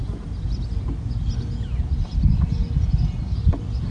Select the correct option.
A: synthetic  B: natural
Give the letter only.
B